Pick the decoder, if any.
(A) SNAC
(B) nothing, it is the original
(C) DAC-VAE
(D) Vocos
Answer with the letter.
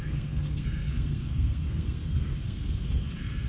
A